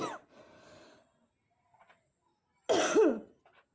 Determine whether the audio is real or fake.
real